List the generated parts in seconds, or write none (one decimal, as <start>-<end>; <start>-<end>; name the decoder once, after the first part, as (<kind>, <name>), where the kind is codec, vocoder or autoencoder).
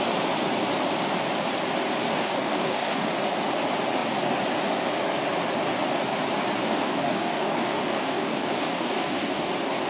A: 2.1-3.1 (codec, DAC); 6.6-9.5